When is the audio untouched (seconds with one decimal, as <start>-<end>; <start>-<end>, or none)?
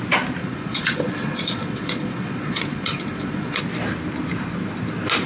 0.0-0.4; 3.6-5.3